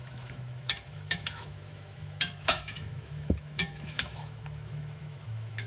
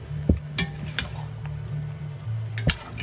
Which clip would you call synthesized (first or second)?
first